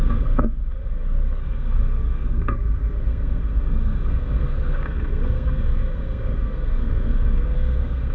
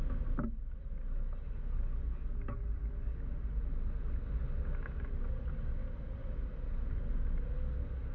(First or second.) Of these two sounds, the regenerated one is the first